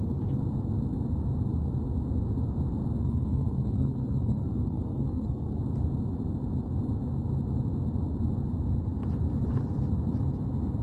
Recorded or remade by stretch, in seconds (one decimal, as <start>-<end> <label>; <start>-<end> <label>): 0.0-3.0 recorded; 3.0-5.6 remade; 5.6-10.8 recorded